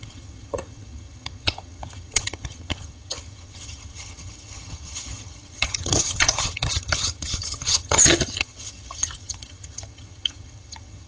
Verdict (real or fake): fake